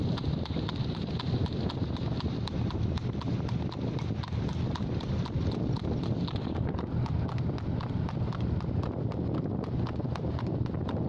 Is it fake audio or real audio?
real